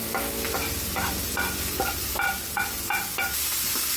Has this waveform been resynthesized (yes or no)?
no